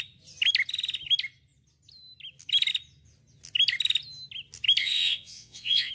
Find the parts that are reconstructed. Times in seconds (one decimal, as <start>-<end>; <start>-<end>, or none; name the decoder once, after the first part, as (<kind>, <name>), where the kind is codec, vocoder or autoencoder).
4.8-5.9 (vocoder, WaveNeXt)

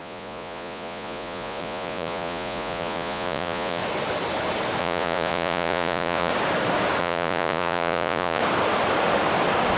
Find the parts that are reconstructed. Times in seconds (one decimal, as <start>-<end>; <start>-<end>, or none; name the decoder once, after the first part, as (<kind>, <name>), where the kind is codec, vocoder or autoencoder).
0.0-3.8 (vocoder, Vocos); 4.8-6.3; 7.0-8.4

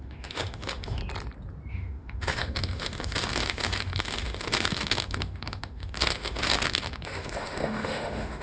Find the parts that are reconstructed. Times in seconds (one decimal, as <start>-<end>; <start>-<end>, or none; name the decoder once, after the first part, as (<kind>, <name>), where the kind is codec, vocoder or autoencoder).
0.0-1.0 (autoencoder, DAC-VAE); 1.7-8.4

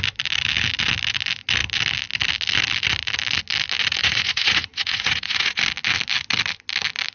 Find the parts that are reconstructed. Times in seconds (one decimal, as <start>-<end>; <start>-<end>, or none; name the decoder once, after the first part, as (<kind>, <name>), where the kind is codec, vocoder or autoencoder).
4.0-5.6 (vocoder, Vocos)